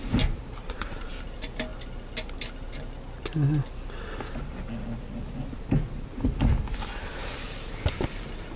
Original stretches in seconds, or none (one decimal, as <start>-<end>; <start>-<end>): 0.0-0.6; 1.1-8.6